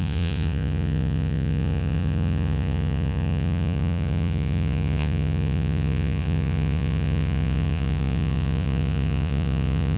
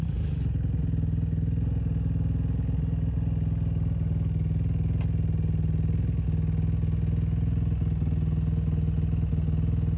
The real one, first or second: second